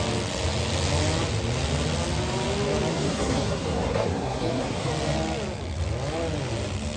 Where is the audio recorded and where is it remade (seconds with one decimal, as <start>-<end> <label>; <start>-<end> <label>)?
0.0-2.9 recorded; 2.9-4.9 remade; 4.9-7.0 recorded